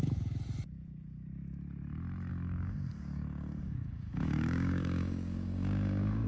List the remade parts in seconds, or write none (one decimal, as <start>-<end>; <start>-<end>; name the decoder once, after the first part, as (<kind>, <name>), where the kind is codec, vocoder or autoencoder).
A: 2.3-6.3 (codec, DAC)